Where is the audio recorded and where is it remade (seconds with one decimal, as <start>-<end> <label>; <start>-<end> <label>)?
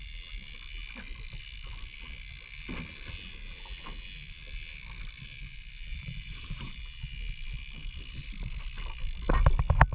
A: 0.0-5.9 recorded; 5.9-6.8 remade; 6.8-9.9 recorded